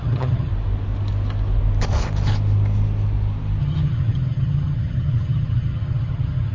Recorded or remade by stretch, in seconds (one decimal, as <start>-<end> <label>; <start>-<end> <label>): 0.0-0.5 remade; 0.5-3.6 recorded; 3.6-6.5 remade